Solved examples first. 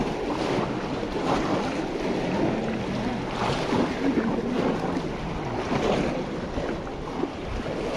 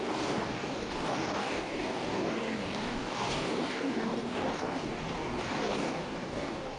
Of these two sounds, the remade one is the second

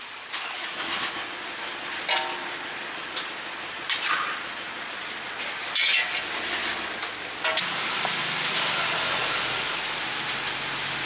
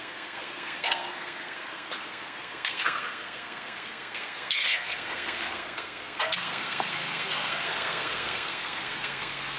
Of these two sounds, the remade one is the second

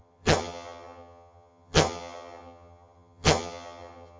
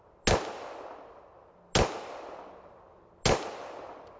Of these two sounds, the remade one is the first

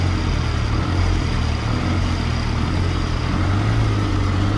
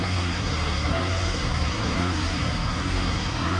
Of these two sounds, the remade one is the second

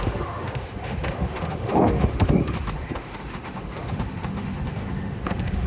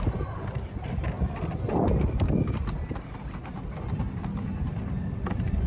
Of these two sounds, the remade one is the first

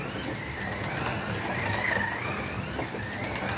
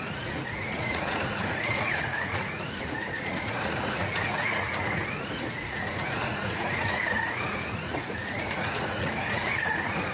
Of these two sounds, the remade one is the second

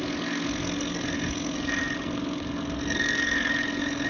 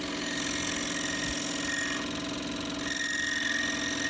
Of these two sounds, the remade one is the first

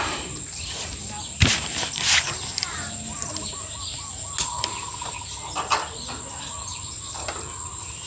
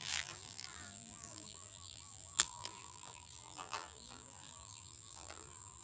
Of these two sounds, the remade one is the second